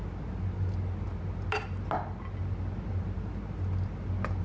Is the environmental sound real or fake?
real